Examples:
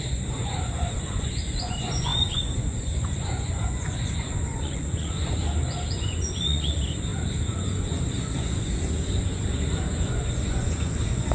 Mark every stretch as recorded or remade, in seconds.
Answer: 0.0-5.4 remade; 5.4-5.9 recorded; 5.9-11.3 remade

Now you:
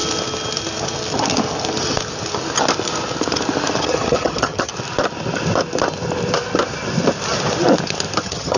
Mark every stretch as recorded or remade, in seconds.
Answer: 0.0-3.8 recorded; 3.8-4.7 remade; 4.7-8.2 recorded; 8.2-8.6 remade

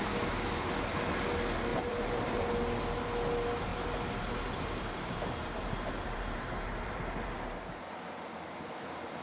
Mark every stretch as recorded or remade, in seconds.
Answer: 0.0-1.7 recorded; 1.7-2.5 remade; 2.5-3.7 recorded; 3.7-9.2 remade

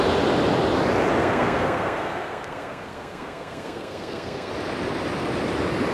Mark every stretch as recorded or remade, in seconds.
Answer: 0.0-1.2 recorded; 1.2-4.5 remade; 4.5-5.9 recorded